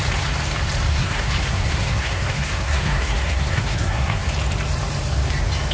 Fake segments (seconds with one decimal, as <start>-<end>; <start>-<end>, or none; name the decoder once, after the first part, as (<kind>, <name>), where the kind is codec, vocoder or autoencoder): 0.9-4.3 (codec, SNAC)